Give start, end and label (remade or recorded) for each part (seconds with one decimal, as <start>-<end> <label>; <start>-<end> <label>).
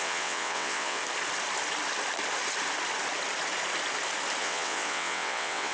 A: 0.0-1.0 remade; 1.0-4.4 recorded; 4.4-5.7 remade